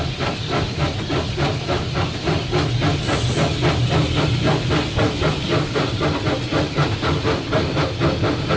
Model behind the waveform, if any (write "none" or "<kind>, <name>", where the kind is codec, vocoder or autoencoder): none